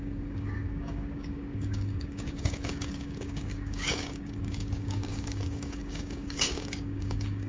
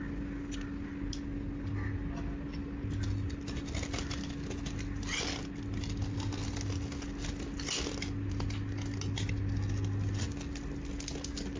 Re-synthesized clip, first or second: first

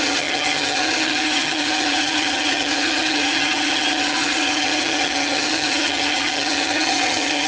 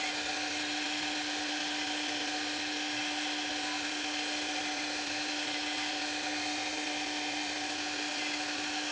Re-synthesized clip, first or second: first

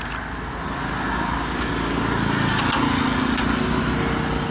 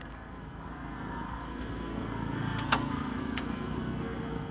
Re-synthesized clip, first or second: second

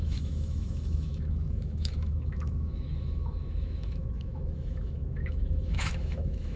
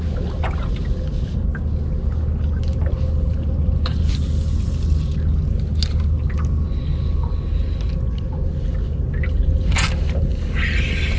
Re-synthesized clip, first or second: first